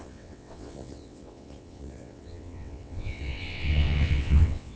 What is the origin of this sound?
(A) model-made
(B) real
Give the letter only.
A